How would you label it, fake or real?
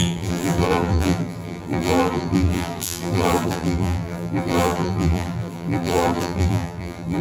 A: fake